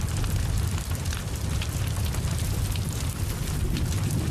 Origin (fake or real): fake